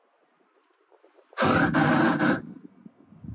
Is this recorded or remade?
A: recorded